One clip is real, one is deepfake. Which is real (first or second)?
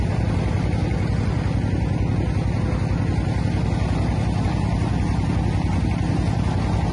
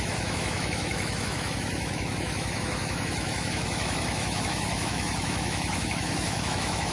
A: first